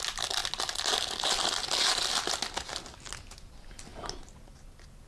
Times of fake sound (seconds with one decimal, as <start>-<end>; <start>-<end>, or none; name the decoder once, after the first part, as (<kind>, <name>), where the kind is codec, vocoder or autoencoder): none